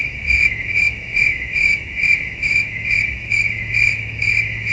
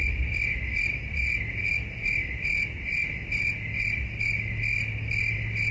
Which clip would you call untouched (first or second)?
second